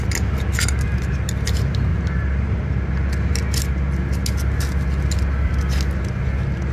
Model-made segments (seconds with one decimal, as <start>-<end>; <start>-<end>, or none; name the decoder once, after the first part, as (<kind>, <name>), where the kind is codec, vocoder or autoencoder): 1.9-2.5 (vocoder, BigVGAN v2)